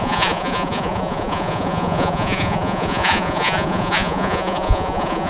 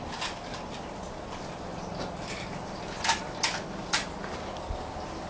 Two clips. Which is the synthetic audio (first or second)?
first